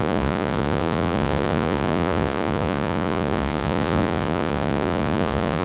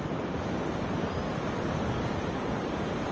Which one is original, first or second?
second